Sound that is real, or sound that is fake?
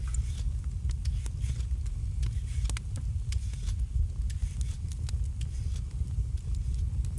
real